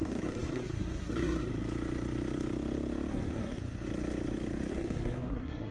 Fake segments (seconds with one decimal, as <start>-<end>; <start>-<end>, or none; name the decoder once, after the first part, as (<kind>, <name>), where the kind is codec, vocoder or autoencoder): 0.0-1.5 (codec, SNAC); 3.1-3.6; 4.7-5.7